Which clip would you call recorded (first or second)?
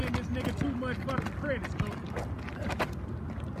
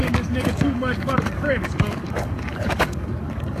first